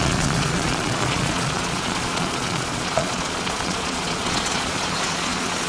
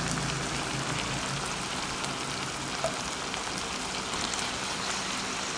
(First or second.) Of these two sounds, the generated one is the first